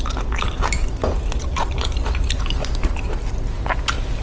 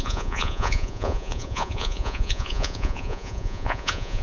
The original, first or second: first